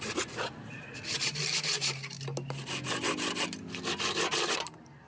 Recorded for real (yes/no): yes